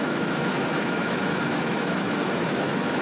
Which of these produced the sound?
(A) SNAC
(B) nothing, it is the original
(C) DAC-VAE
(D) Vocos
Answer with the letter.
C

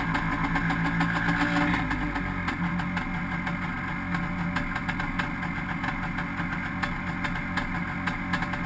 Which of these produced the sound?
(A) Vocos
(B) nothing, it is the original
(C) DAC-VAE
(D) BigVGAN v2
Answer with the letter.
B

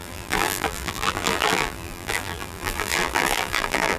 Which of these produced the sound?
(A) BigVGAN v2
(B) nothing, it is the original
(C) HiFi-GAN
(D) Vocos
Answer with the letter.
A